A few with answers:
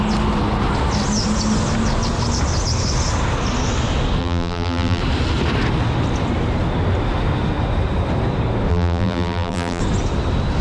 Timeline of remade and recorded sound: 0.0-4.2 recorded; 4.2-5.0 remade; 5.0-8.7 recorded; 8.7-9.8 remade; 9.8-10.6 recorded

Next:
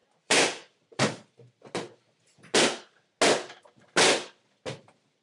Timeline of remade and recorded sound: 0.0-1.3 remade; 1.3-5.2 recorded